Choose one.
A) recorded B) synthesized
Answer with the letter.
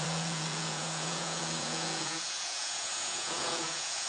B